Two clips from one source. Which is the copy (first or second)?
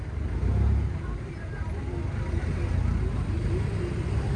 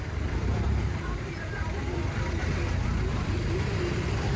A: second